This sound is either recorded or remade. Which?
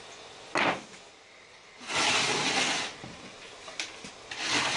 recorded